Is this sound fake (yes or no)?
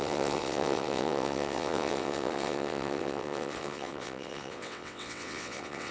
yes